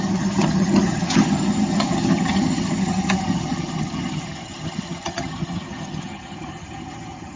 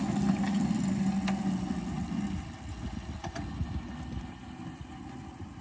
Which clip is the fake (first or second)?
first